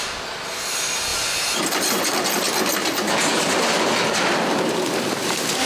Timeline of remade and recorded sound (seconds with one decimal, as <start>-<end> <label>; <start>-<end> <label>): 0.0-3.3 recorded; 3.3-4.0 remade; 4.0-5.7 recorded